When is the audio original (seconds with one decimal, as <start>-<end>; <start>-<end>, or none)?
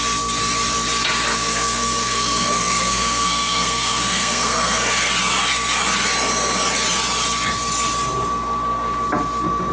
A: 0.0-1.3; 5.1-9.7